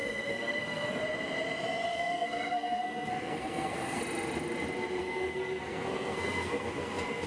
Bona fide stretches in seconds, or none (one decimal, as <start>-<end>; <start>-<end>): 1.0-1.9; 4.0-5.0